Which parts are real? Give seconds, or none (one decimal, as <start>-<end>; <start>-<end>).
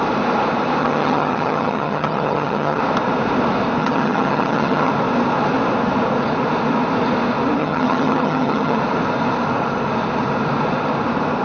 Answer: 0.0-0.8; 2.8-3.8; 4.9-7.6; 8.8-11.4